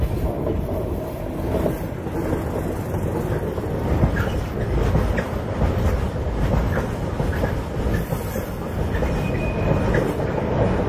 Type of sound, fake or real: real